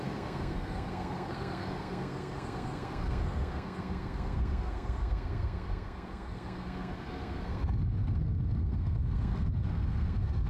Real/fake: fake